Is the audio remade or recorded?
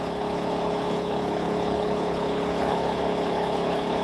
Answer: remade